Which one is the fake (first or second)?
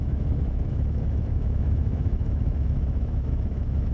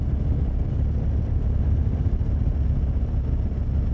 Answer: first